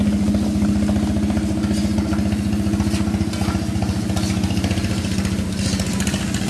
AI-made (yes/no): no